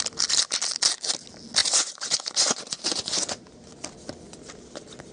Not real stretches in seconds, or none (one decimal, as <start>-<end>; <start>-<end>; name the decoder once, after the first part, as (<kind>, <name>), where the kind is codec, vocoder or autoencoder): 1.6-3.7 (vocoder, Vocos)